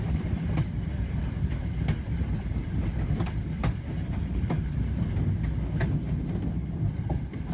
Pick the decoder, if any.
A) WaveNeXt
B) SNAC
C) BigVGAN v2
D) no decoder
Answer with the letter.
D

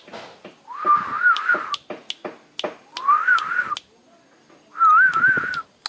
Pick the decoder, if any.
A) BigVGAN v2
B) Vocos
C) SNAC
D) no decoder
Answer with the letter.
D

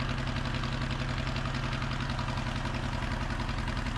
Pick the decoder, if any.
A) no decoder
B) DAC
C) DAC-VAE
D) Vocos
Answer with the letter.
A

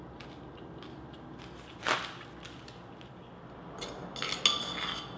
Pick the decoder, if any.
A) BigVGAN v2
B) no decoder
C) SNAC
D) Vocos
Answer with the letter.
B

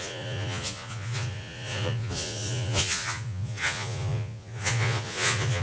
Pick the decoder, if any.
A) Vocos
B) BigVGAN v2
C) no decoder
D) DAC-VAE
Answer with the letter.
A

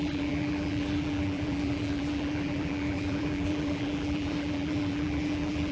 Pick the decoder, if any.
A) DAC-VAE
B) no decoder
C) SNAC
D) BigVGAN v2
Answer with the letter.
D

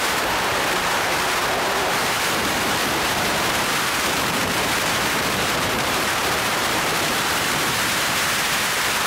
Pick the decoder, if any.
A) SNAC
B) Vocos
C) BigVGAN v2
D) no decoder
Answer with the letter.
C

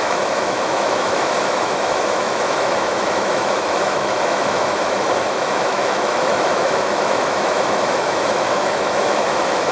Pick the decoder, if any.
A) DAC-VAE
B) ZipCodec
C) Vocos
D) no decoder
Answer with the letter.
A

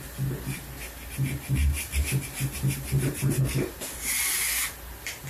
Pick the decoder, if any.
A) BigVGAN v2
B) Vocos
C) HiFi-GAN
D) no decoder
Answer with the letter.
D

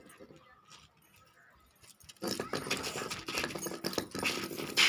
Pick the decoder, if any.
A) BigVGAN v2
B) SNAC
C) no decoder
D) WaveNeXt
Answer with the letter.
C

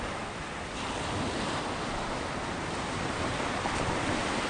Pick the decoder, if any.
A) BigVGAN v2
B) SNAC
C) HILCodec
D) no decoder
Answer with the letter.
D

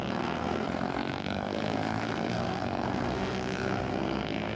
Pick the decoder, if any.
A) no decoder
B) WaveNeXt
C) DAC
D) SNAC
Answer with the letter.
D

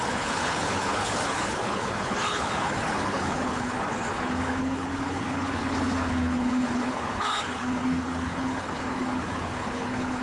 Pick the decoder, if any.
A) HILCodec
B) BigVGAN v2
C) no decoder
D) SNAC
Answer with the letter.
A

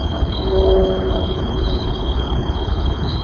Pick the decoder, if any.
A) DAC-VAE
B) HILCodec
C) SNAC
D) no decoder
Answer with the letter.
B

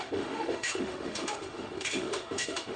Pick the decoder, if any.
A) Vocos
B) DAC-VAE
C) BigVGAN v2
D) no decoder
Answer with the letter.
B